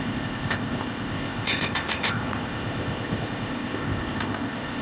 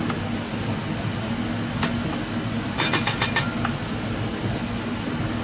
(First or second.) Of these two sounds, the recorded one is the second